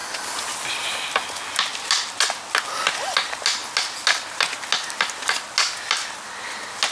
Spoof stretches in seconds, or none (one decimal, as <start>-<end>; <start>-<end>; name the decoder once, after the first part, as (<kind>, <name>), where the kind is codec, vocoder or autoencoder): none